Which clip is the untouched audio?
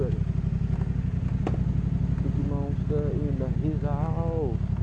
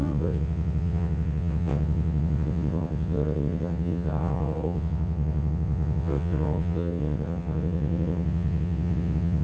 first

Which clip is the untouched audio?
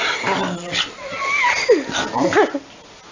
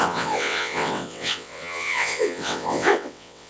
first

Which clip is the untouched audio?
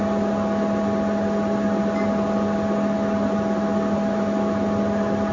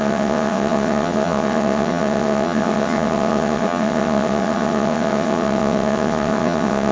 first